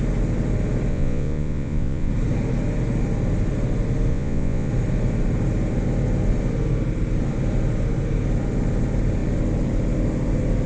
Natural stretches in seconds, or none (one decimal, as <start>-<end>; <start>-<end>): 0.0-0.9; 2.1-4.1; 4.7-10.7